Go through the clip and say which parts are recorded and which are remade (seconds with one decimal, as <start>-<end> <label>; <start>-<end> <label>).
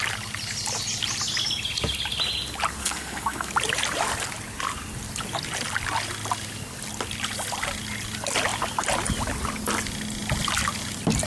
0.0-2.8 recorded; 2.8-3.5 remade; 3.5-11.3 recorded